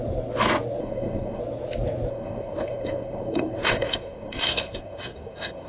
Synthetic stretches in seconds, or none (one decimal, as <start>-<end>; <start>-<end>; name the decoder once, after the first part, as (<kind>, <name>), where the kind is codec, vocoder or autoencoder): 0.8-1.4 (codec, SNAC); 2.1-5.7